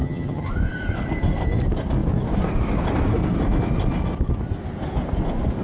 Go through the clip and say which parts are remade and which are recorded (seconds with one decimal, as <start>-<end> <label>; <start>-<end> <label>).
0.0-0.5 remade; 0.5-5.6 recorded